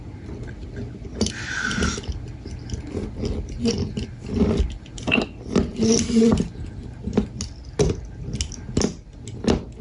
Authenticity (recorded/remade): recorded